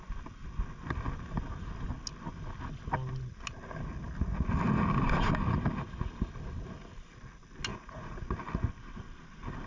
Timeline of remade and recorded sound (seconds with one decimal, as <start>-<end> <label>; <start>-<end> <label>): 0.0-7.7 recorded; 7.7-8.2 remade; 8.2-9.7 recorded